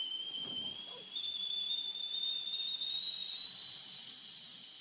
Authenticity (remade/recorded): recorded